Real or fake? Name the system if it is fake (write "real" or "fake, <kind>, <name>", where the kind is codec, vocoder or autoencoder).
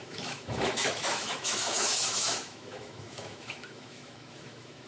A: fake, autoencoder, DAC-VAE